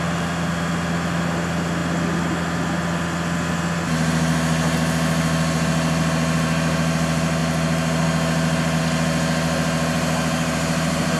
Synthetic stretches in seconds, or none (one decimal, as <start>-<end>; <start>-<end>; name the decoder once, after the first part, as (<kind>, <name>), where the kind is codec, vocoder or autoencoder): none